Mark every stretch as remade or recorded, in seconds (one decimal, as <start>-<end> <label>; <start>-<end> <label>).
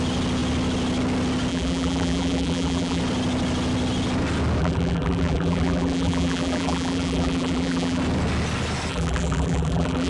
0.0-1.5 recorded; 1.5-3.0 remade; 3.0-4.6 recorded; 4.6-8.0 remade; 8.0-8.9 recorded; 8.9-10.1 remade